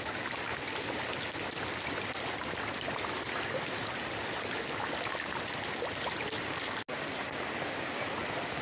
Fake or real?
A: real